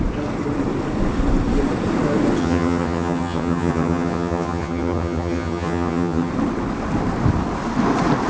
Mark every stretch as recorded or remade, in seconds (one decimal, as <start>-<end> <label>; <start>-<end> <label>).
0.0-2.4 recorded; 2.4-6.3 remade; 6.3-8.3 recorded